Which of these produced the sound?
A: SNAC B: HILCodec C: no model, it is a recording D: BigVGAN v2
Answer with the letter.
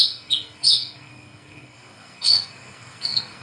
A